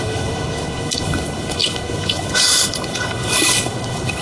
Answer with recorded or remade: remade